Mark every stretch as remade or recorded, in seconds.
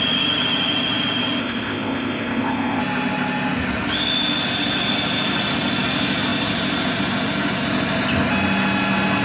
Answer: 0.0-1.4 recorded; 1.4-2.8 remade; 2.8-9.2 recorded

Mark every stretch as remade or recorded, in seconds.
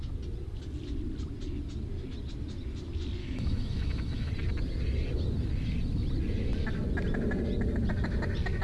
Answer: 0.0-3.2 recorded; 3.2-4.3 remade; 4.3-8.6 recorded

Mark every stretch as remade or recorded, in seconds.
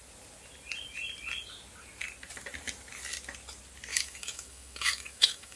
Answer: 0.0-3.9 recorded; 3.9-5.6 remade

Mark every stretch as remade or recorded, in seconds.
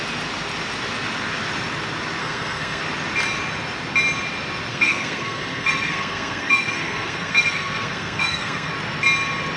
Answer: 0.0-2.2 recorded; 2.2-2.8 remade; 2.8-4.7 recorded; 4.7-8.7 remade; 8.7-9.6 recorded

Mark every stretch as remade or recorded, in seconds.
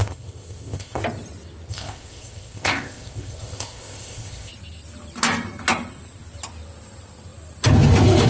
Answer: 0.0-1.0 remade; 1.0-1.7 recorded; 1.7-4.5 remade; 4.5-8.3 recorded